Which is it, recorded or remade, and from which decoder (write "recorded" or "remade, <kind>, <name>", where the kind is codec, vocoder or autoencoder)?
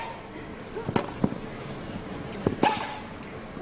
recorded